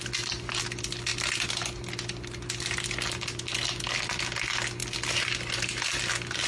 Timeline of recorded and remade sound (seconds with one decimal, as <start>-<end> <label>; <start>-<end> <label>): 0.0-6.5 recorded